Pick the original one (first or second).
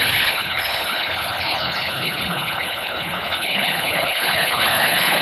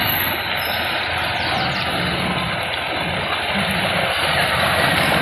second